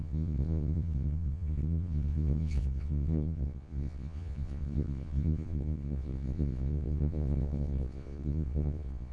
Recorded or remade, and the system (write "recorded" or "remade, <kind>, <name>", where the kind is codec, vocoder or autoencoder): remade, vocoder, Vocos